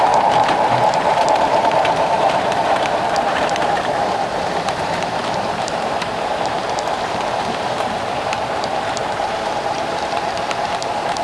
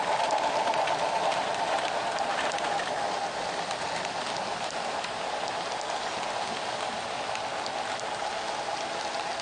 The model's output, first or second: first